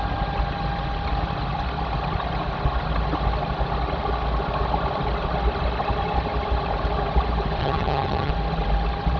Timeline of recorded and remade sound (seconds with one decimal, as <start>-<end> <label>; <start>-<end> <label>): 0.0-7.6 recorded; 7.6-8.3 remade; 8.3-9.2 recorded